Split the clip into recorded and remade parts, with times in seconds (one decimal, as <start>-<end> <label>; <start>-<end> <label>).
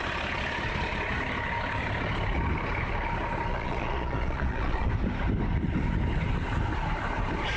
0.0-3.5 recorded; 3.5-4.9 remade; 4.9-7.6 recorded